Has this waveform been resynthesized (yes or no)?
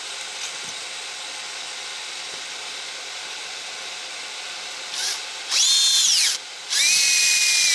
no